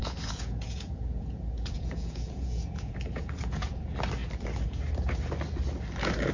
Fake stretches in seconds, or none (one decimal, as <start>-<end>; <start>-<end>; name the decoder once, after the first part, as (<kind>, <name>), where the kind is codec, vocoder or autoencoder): 0.0-3.8 (vocoder, Vocos)